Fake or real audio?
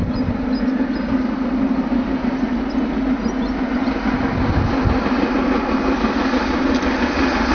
real